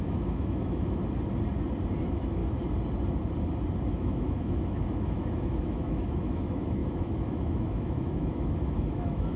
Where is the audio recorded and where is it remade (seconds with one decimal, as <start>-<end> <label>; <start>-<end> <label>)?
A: 0.0-1.0 remade; 1.0-2.0 recorded; 2.0-2.4 remade; 2.4-3.9 recorded; 3.9-9.4 remade